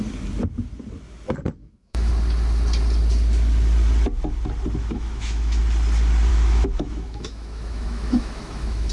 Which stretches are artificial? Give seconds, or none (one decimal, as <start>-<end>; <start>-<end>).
1.6-2.1; 4.8-5.6; 6.3-8.9